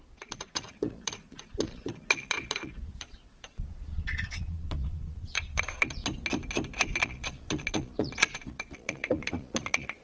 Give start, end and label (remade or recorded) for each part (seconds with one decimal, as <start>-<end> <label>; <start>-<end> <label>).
0.0-6.0 remade; 6.0-7.0 recorded; 7.0-10.0 remade